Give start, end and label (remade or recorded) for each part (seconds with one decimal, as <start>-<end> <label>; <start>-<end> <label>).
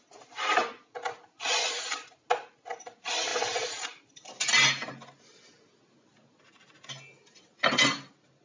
0.0-8.4 recorded